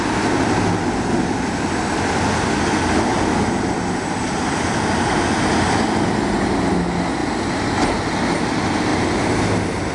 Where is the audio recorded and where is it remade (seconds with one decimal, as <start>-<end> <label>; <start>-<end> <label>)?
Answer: 0.0-9.9 recorded